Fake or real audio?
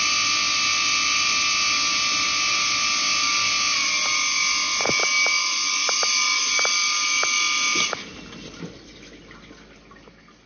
real